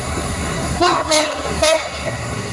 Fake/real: fake